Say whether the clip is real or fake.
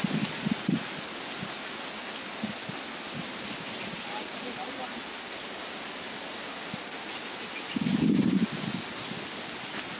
real